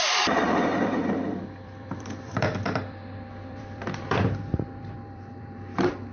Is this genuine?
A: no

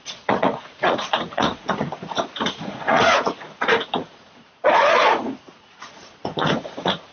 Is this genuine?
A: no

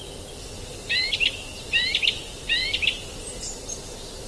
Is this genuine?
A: yes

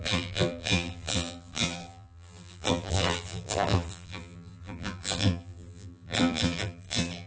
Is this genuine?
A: no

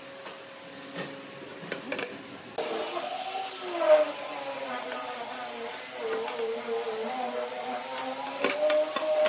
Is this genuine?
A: yes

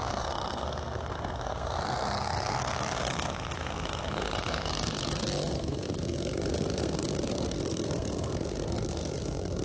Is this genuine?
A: no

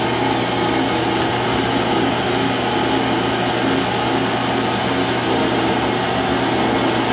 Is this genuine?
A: yes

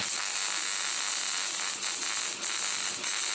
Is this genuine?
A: yes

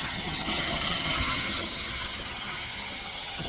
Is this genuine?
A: no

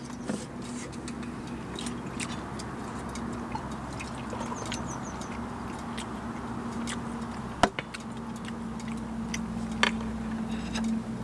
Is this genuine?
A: yes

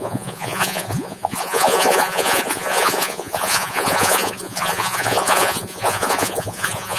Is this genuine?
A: no